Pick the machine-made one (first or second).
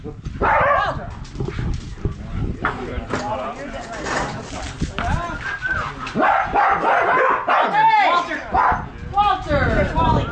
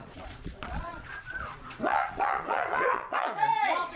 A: second